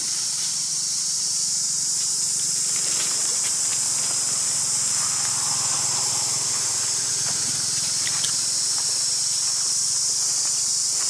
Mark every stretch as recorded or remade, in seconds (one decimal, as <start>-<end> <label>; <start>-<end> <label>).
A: 0.0-3.7 remade; 3.7-7.1 recorded; 7.1-11.1 remade